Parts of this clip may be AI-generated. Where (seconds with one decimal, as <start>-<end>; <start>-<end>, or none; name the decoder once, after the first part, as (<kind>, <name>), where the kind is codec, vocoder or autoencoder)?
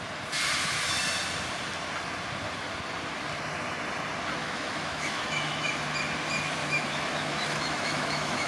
4.4-5.7 (autoencoder, DAC-VAE); 6.6-8.5